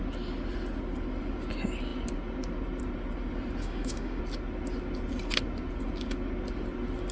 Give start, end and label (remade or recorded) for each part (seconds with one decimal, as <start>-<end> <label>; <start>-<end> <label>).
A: 0.0-3.6 recorded; 3.6-4.2 remade; 4.2-7.1 recorded